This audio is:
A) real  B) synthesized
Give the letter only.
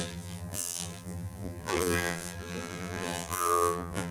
B